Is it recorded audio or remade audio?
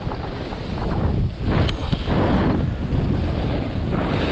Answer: recorded